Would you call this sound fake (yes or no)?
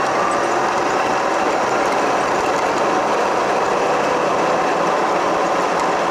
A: no